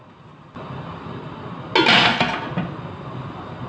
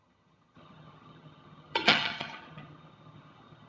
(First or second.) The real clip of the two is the first